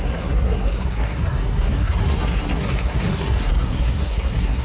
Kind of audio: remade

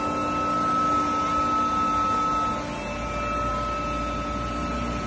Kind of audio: recorded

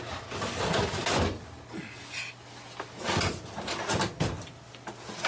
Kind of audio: recorded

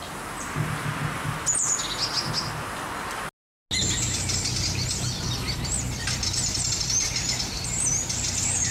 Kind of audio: recorded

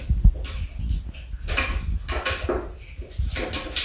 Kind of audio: recorded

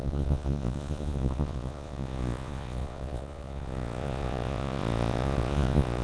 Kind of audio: remade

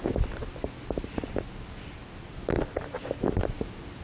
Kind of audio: recorded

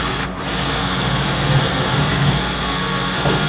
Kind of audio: remade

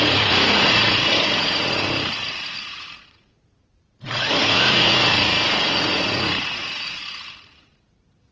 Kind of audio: remade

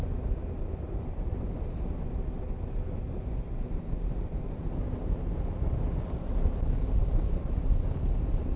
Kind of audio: recorded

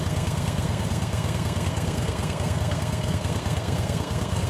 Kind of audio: remade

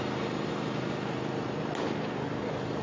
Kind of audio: recorded